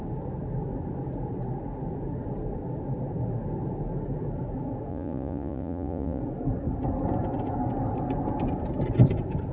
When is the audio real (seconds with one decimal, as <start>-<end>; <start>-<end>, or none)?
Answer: 0.0-4.9; 6.2-9.5